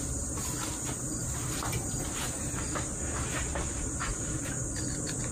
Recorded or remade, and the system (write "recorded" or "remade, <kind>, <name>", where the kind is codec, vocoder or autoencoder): recorded